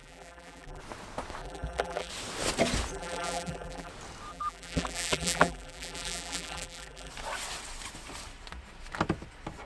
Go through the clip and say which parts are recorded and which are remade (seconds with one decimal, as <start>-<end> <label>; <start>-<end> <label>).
0.0-0.8 remade; 0.8-1.4 recorded; 1.4-2.1 remade; 2.1-2.9 recorded; 2.9-3.9 remade; 3.9-4.3 recorded; 4.3-7.1 remade; 7.1-9.7 recorded